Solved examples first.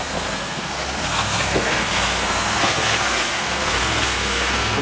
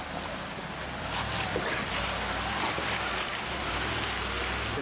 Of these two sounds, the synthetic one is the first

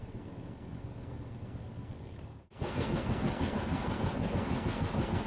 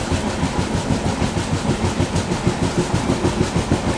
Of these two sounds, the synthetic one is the first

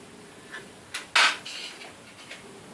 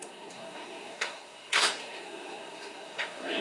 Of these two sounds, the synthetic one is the second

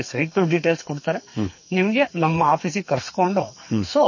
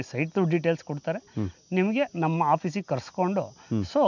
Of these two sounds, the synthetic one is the first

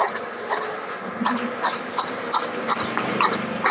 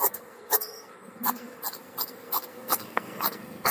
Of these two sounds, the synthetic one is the second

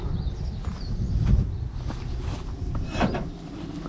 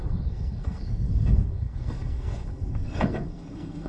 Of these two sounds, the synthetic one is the second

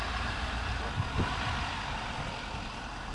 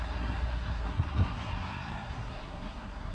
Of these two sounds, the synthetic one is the second